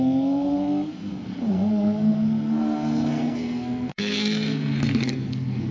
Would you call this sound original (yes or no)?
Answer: no